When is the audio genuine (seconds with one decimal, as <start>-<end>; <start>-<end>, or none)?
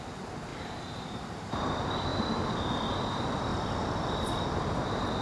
0.0-0.5; 1.6-2.1; 2.9-3.5